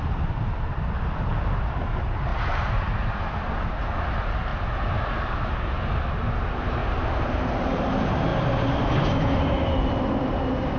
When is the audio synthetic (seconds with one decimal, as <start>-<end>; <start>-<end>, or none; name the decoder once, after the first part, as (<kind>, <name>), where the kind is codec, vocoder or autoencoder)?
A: 2.3-3.7 (vocoder, BigVGAN v2); 6.8-7.7